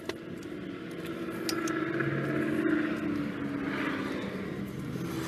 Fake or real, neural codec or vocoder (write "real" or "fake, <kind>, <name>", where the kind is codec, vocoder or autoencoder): real